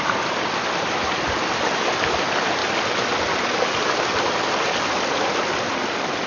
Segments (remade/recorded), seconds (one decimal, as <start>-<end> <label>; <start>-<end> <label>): 0.0-6.3 recorded